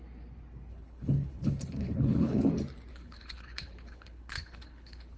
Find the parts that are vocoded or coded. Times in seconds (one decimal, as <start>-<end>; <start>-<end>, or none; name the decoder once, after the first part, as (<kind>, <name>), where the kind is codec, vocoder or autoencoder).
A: 0.7-2.5 (codec, HILCodec); 2.9-5.2